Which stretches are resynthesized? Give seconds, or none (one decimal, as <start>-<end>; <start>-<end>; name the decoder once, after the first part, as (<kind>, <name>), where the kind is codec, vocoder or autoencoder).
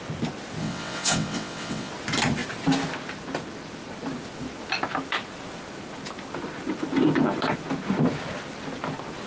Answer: 0.6-1.9 (vocoder, WaveNeXt)